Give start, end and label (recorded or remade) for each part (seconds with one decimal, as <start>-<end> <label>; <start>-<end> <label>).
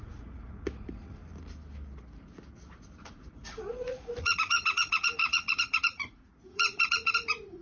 0.0-1.2 remade; 1.2-3.1 recorded; 3.1-7.6 remade